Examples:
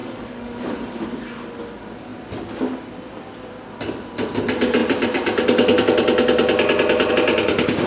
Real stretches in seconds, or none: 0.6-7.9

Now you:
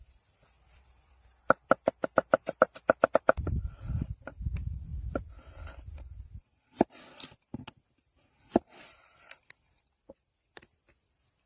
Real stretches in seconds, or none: 4.9-6.4; 7.5-8.8

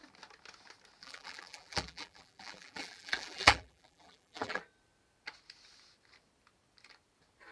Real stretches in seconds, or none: 0.0-1.0; 4.6-7.5

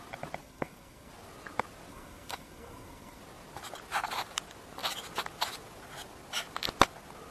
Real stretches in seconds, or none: 0.0-0.4; 1.1-1.9; 3.2-7.3

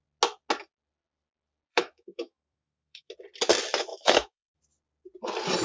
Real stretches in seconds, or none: 0.0-1.7; 3.1-3.9; 4.6-5.6

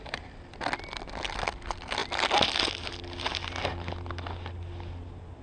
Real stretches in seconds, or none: 0.0-5.4

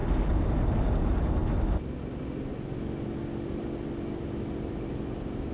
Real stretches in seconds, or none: 0.0-5.5